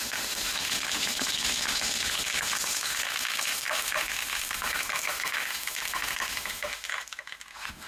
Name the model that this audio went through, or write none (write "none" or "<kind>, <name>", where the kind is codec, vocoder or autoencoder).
autoencoder, DAC-VAE